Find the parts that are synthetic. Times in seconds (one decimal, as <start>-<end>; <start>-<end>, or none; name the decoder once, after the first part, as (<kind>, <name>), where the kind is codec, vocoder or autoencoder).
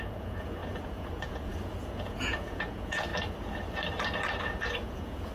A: 0.0-3.1 (vocoder, Vocos); 4.4-5.3